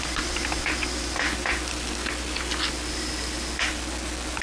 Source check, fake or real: real